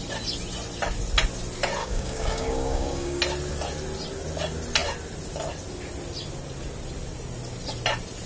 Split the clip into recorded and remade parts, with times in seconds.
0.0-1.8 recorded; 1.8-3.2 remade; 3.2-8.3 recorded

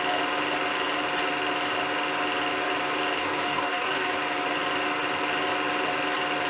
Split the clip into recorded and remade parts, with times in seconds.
0.0-3.2 recorded; 3.2-4.1 remade; 4.1-6.5 recorded

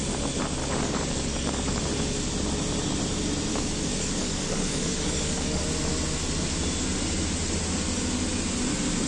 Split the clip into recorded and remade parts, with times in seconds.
0.0-0.6 recorded; 0.6-1.8 remade; 1.8-3.5 recorded; 3.5-5.6 remade; 5.6-9.1 recorded

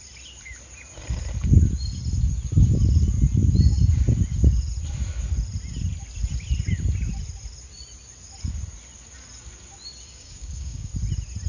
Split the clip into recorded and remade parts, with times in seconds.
0.0-10.1 recorded; 10.1-10.9 remade; 10.9-11.5 recorded

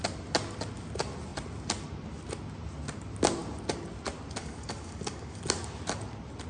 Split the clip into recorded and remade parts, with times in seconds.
0.0-4.4 recorded; 4.4-5.4 remade; 5.4-6.5 recorded

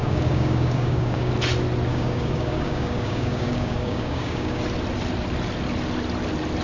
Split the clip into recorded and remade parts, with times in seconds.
0.0-1.3 remade; 1.3-1.9 recorded; 1.9-4.6 remade; 4.6-6.6 recorded